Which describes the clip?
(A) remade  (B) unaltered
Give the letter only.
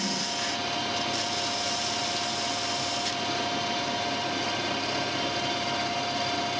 B